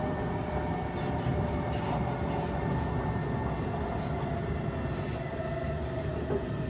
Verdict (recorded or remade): recorded